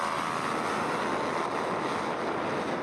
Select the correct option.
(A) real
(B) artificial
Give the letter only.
A